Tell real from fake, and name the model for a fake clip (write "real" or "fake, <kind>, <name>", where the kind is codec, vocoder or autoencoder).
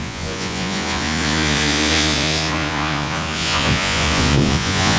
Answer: fake, vocoder, Vocos